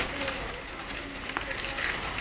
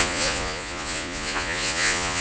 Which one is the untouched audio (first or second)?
first